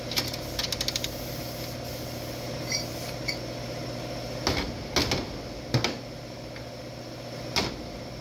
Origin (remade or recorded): recorded